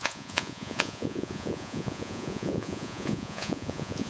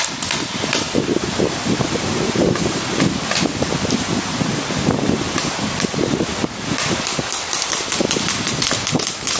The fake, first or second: first